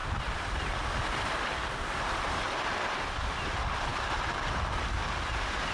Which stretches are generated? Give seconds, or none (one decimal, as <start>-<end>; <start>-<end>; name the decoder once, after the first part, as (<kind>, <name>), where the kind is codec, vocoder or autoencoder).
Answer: none